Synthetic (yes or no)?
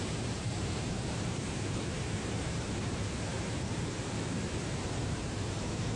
yes